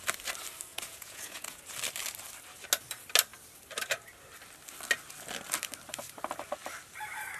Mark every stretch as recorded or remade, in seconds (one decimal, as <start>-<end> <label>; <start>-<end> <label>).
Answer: 0.0-0.7 recorded; 0.7-1.6 remade; 1.6-7.4 recorded